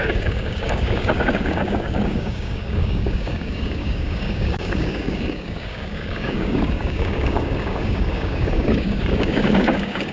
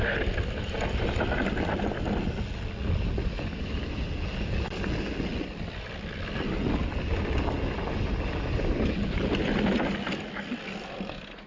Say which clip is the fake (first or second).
first